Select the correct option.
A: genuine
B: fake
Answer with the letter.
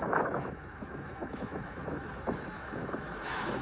B